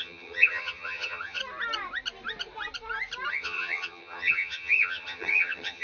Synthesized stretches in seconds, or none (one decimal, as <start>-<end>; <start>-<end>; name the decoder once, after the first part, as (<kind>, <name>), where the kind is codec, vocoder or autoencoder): 0.0-1.4 (vocoder, HiFi-GAN); 3.3-5.8